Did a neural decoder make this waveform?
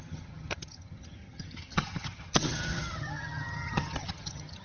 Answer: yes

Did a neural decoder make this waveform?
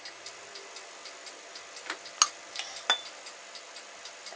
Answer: no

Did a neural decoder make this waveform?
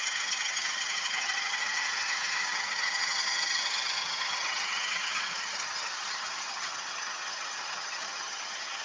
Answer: yes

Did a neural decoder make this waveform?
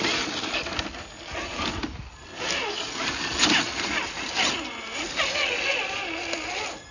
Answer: no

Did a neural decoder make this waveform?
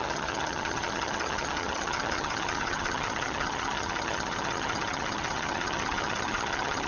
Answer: yes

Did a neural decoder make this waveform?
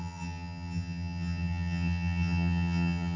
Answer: yes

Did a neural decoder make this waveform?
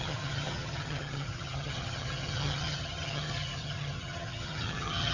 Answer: yes